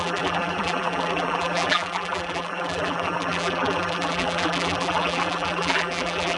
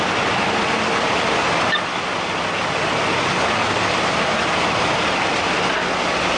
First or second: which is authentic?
second